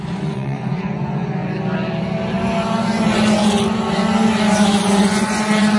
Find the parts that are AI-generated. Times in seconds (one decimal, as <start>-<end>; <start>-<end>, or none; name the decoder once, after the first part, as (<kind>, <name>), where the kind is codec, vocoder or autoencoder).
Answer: 0.0-1.4 (vocoder, Vocos); 4.9-5.8